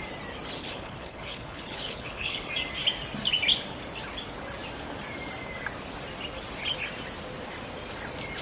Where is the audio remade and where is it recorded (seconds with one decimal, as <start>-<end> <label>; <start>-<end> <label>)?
0.0-0.6 recorded; 0.6-2.5 remade; 2.5-8.4 recorded